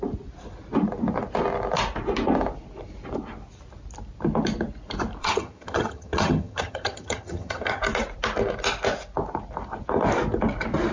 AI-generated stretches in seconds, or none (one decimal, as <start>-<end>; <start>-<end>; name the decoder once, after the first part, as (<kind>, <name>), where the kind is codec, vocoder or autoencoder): 5.2-7.8 (vocoder, HiFi-GAN)